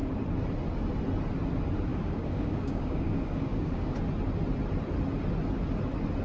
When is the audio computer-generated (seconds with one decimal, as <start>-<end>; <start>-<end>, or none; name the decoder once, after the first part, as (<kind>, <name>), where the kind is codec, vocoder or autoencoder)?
1.9-4.0 (codec, DAC)